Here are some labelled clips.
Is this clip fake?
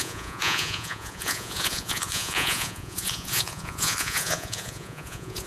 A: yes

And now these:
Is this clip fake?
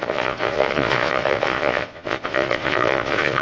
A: yes